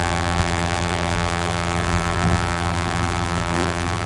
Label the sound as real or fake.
fake